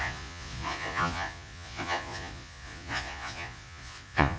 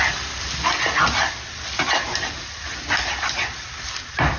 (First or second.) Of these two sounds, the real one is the second